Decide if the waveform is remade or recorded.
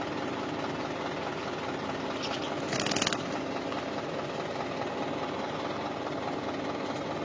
recorded